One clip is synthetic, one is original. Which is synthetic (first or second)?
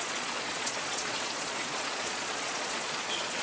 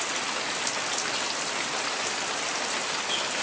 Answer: first